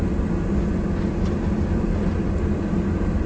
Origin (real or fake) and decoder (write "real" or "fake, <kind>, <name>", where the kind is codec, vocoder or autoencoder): real